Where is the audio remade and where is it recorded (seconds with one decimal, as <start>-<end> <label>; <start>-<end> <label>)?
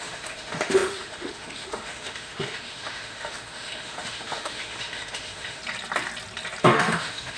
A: 0.0-5.6 remade; 5.6-6.6 recorded; 6.6-7.4 remade